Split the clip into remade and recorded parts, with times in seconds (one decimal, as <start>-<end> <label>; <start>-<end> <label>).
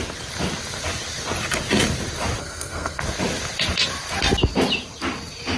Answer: 0.0-2.4 recorded; 2.4-3.0 remade; 3.0-5.6 recorded